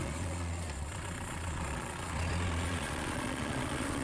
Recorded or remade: remade